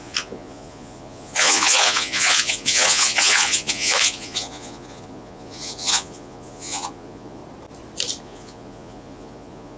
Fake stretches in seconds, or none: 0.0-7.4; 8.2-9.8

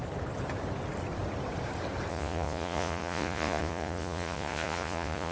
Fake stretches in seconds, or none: 2.1-5.3

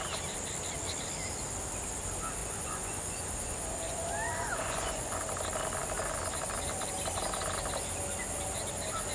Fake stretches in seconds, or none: 2.4-5.2